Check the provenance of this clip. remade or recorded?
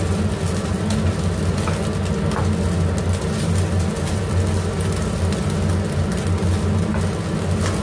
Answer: recorded